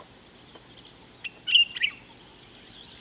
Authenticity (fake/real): real